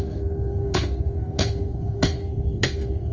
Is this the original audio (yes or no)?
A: no